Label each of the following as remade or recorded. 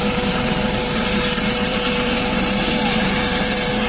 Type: remade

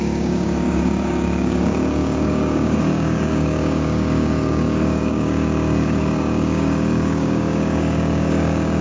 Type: remade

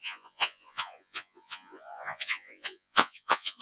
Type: remade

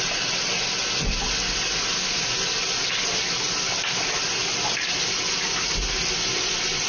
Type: recorded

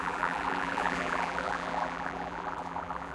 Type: remade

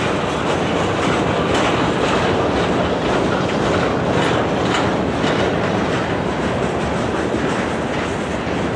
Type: recorded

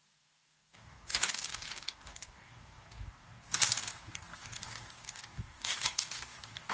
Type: remade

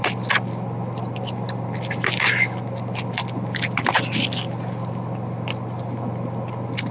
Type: recorded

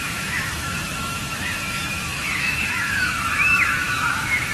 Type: remade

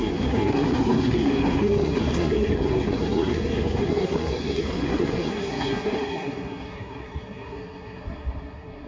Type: remade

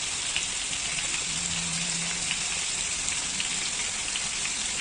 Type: recorded